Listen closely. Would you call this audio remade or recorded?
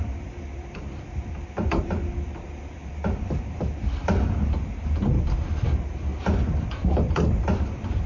remade